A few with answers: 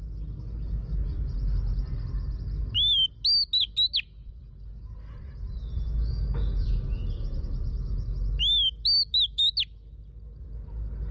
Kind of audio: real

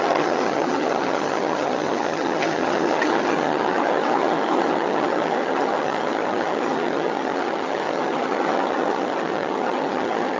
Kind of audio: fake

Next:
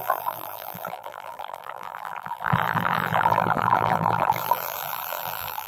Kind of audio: fake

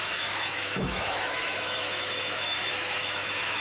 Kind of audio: fake